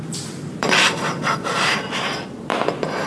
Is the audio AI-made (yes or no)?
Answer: yes